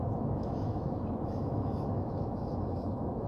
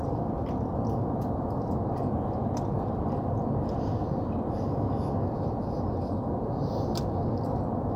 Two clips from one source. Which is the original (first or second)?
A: second